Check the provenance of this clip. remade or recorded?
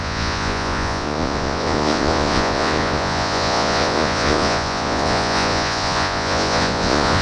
remade